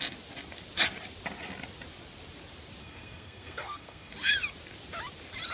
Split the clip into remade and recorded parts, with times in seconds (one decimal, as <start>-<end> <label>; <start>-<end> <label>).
0.0-2.8 recorded; 2.8-4.1 remade; 4.1-5.5 recorded